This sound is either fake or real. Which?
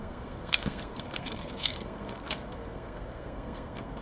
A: fake